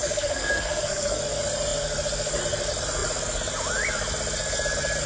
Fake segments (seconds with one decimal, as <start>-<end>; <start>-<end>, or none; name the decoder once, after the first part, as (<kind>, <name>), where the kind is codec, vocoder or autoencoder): 0.0-1.2 (codec, SNAC)